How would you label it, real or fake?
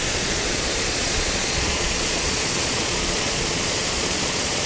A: fake